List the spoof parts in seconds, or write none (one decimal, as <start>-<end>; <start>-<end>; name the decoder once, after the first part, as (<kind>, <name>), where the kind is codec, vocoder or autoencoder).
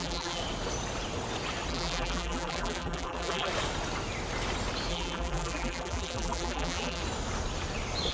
0.0-0.4 (vocoder, BigVGAN v2); 1.7-3.5; 4.9-7.0